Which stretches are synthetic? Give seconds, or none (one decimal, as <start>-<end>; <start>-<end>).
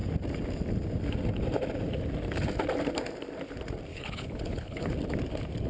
3.9-4.9